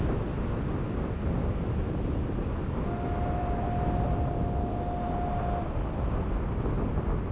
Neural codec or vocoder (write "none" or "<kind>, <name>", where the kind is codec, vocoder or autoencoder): none